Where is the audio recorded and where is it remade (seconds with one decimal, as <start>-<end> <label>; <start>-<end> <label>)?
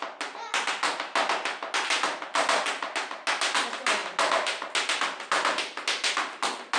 0.0-6.8 recorded